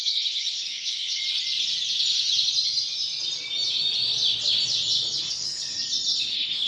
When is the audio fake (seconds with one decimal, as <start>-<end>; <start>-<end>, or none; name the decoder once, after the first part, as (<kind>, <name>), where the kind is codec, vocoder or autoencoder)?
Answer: 0.0-1.2 (codec, HILCodec); 5.2-5.7; 6.3-6.7